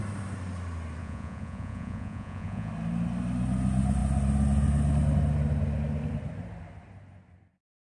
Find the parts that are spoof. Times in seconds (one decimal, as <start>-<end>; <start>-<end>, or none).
1.0-2.7